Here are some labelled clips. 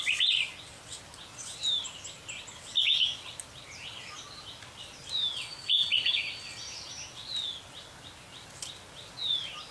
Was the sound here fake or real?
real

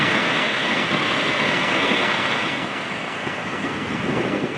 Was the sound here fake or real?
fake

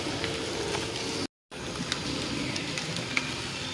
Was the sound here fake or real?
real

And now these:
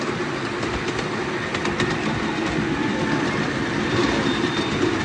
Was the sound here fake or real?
real